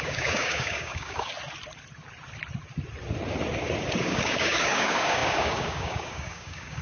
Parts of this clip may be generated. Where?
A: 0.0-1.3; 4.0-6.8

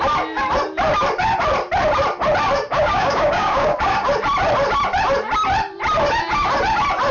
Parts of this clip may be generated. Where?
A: 2.6-4.1

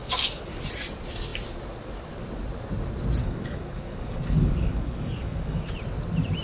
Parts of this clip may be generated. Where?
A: 0.0-0.6; 3.2-5.7

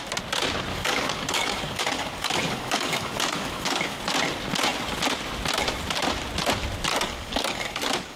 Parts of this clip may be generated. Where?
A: 0.7-4.0; 6.9-8.2

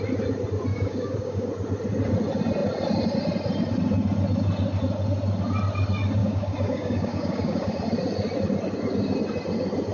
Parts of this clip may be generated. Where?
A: 0.7-1.5; 6.2-7.8

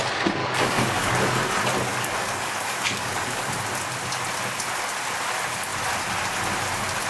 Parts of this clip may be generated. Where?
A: 0.4-1.1; 1.9-3.5

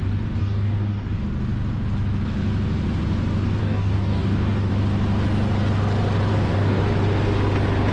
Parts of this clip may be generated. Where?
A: 0.4-1.2; 3.6-4.7; 6.3-6.8

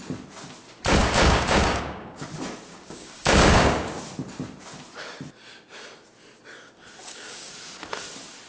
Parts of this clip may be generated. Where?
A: 1.0-2.2; 2.7-4.0; 7.0-7.5